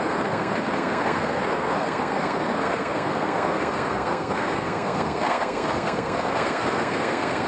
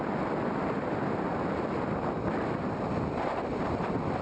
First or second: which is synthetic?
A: first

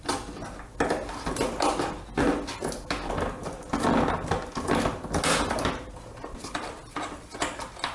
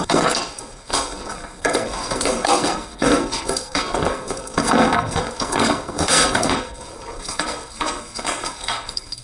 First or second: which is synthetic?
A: second